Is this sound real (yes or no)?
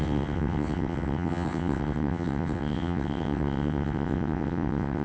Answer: no